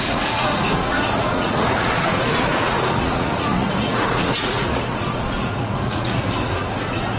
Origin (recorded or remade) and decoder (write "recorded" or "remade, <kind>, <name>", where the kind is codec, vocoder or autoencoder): remade, vocoder, Vocos